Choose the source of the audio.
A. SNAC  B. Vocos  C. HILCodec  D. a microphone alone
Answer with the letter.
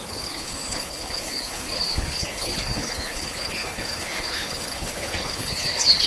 C